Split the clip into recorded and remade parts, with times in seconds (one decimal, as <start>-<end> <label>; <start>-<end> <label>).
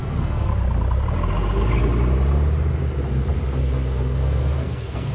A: 0.0-0.5 remade; 0.5-3.6 recorded; 3.6-5.1 remade